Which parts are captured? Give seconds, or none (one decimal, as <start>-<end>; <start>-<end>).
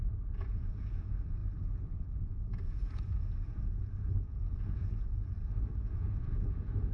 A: none